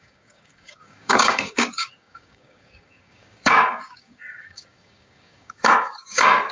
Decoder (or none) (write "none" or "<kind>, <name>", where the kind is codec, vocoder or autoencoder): codec, DAC